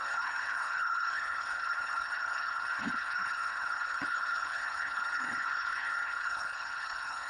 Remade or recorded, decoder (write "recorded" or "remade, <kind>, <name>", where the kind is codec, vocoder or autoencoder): remade, codec, HILCodec